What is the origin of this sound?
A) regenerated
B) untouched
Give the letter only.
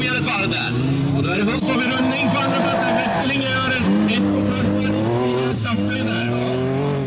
B